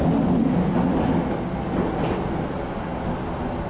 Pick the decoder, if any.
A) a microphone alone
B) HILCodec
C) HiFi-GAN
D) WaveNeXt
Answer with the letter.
A